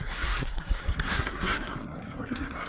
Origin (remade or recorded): remade